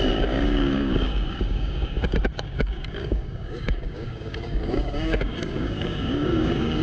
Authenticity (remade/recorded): remade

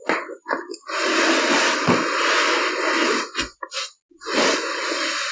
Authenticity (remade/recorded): recorded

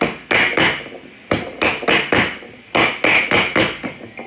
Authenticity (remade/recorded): recorded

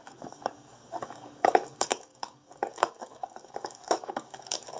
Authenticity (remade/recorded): remade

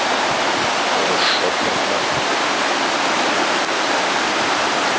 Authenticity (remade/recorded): recorded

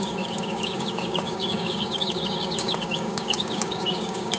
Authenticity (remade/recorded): remade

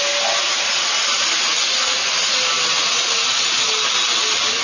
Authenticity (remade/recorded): recorded